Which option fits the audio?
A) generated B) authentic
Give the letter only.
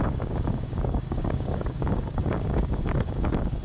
A